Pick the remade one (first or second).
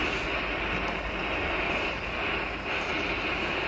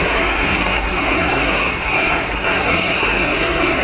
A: second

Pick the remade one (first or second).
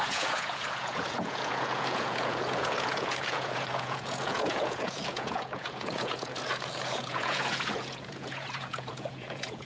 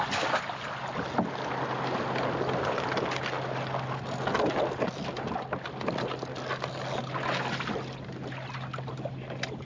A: first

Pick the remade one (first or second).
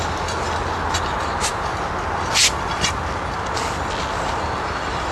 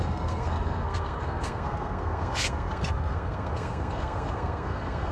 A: second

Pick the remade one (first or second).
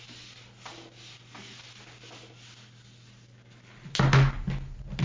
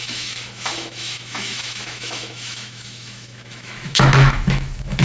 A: second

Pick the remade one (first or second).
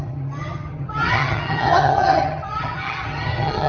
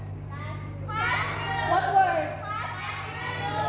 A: first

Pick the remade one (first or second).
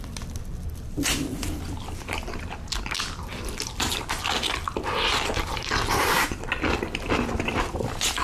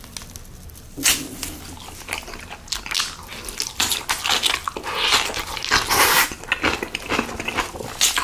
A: first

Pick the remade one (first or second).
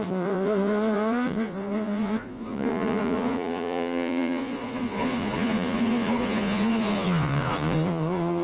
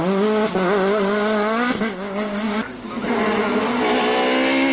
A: first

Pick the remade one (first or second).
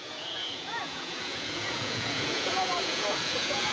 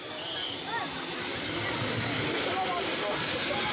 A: first